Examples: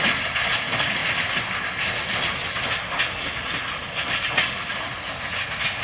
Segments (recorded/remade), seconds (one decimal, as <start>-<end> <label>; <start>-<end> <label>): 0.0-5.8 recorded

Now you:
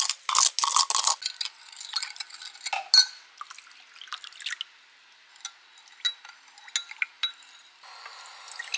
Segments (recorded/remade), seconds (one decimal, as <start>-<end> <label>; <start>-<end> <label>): 0.0-8.8 recorded

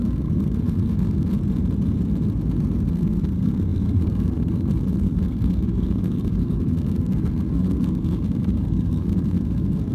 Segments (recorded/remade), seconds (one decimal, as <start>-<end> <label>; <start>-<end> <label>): 0.0-1.3 remade; 1.3-2.9 recorded; 2.9-9.9 remade

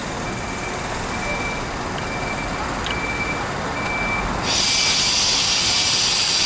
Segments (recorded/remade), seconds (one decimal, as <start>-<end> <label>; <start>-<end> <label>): 0.0-6.5 recorded

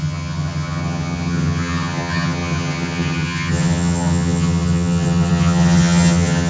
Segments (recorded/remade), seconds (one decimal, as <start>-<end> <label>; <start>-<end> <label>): 0.0-6.5 remade

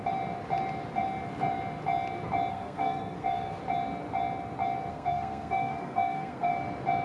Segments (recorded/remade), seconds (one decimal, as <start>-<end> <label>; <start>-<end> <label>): 0.0-2.5 recorded; 2.5-3.6 remade; 3.6-4.9 recorded; 4.9-6.5 remade; 6.5-7.0 recorded